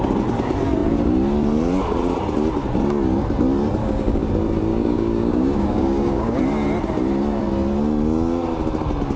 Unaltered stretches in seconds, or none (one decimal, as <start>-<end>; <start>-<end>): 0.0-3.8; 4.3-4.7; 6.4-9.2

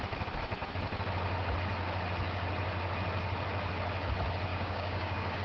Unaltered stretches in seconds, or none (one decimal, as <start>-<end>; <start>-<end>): 0.0-4.5

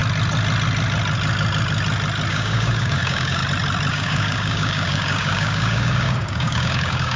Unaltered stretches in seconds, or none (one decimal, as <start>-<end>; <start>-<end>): 0.0-2.3; 3.4-3.9